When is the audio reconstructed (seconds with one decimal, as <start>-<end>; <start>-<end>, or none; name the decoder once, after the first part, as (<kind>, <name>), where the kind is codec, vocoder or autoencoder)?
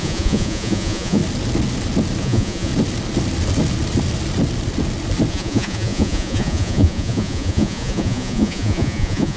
0.0-1.2 (vocoder, Vocos); 2.2-2.7; 5.3-9.4